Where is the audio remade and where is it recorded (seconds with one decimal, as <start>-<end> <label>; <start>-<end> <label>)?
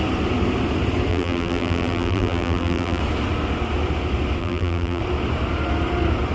0.0-1.1 recorded; 1.1-3.0 remade; 3.0-4.4 recorded; 4.4-5.0 remade; 5.0-6.3 recorded